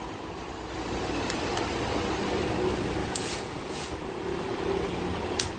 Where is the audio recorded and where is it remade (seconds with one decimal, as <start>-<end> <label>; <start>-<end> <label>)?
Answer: 0.0-3.0 recorded; 3.0-3.9 remade; 3.9-5.6 recorded